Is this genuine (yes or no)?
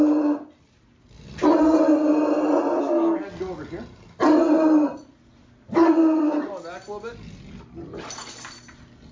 yes